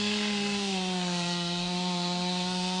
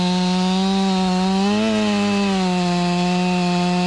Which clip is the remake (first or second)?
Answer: first